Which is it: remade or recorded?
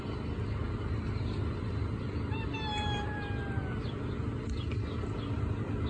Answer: recorded